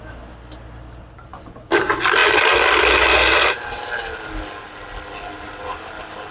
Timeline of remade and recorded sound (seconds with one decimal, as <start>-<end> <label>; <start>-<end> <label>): 0.0-6.3 recorded